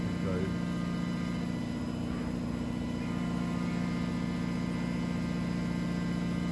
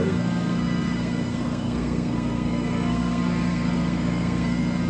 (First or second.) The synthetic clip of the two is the second